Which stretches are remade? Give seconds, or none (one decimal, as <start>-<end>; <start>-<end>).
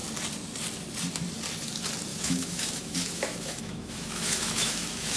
2.1-5.2